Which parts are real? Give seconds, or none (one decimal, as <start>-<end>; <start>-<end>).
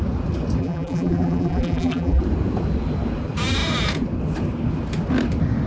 0.0-0.6; 2.2-5.7